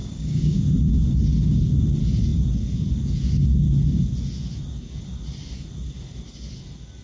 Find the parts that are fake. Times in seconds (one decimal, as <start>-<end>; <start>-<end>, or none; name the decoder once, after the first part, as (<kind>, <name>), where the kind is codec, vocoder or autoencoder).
0.0-0.6 (codec, DAC)

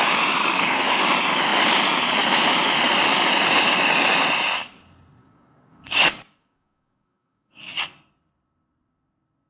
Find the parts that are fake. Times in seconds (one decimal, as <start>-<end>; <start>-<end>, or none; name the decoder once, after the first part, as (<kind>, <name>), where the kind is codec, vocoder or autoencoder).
0.4-0.9 (codec, DAC); 5.2-7.8